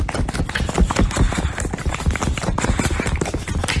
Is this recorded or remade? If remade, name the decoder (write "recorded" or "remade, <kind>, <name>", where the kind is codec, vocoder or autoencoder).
recorded